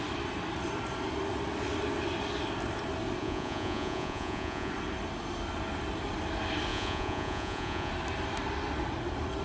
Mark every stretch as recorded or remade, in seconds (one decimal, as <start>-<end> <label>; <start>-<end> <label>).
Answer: 0.0-3.2 recorded; 3.2-4.7 remade; 4.7-6.7 recorded; 6.7-7.9 remade; 7.9-9.4 recorded